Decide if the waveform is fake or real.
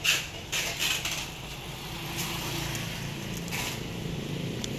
real